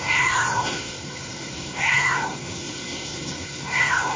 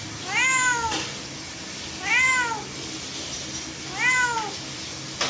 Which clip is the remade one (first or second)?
first